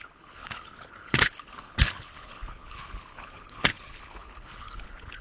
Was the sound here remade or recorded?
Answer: remade